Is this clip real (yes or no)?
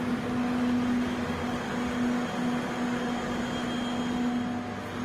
yes